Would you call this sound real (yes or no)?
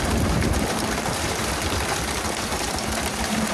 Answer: no